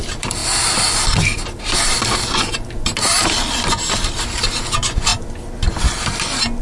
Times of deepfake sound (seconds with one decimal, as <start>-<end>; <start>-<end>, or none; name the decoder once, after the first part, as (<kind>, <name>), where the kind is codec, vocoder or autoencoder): none